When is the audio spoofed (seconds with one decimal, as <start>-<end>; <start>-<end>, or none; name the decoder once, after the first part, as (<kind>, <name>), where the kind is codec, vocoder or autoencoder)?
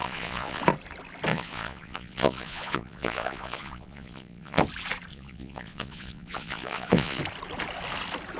0.0-0.6 (vocoder, Vocos); 1.3-4.6; 5.1-7.2